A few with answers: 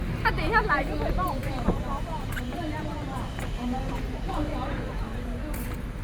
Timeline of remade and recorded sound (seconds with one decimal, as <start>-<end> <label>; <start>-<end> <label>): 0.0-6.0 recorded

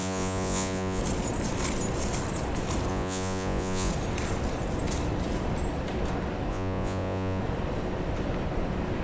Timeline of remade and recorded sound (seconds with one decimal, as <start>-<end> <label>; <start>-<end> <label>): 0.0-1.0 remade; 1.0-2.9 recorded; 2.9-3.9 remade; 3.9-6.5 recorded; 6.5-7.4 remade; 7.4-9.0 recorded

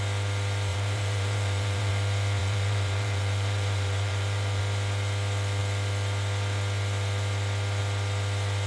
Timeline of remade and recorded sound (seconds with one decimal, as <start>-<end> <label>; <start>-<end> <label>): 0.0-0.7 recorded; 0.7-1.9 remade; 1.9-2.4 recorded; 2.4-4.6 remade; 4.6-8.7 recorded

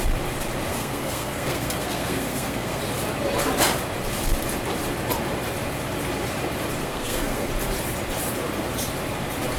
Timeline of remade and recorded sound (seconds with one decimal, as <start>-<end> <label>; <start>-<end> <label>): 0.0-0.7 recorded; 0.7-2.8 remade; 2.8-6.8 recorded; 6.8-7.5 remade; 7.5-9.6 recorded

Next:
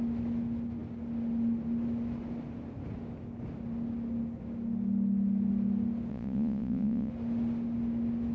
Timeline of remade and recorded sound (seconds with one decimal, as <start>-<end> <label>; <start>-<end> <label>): 0.0-6.1 recorded; 6.1-7.1 remade; 7.1-8.3 recorded